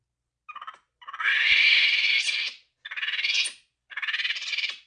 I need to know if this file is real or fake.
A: real